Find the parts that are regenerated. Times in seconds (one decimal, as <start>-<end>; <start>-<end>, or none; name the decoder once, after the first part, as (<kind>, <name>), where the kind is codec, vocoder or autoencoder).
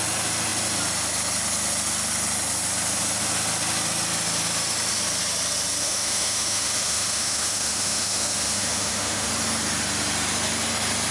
5.8-9.3 (autoencoder, DAC-VAE)